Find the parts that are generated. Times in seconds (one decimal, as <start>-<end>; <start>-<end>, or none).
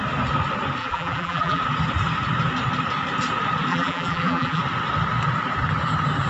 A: 0.8-1.6; 3.7-4.6